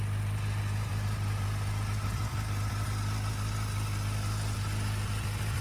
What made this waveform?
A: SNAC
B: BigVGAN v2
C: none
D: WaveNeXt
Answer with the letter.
C